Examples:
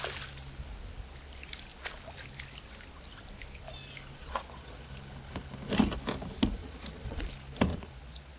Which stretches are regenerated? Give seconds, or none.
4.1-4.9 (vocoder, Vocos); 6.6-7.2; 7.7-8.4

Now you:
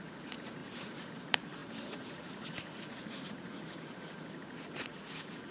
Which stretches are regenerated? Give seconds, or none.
0.0-5.5 (vocoder, Vocos)

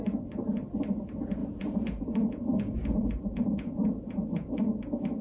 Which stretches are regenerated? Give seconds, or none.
1.4-4.5 (vocoder, Vocos)

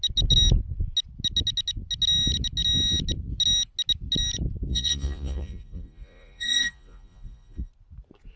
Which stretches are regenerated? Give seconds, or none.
4.7-7.7 (vocoder, Vocos)

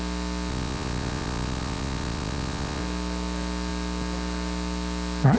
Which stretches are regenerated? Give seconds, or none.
0.5-2.8 (vocoder, Vocos)

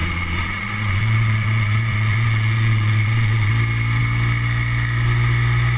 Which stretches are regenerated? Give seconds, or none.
0.0-3.5 (vocoder, Vocos)